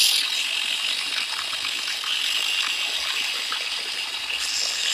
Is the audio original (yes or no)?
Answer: yes